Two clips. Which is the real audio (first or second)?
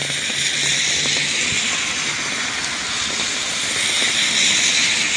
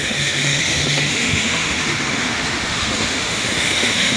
first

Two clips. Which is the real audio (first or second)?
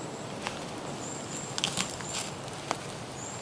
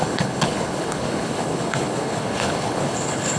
first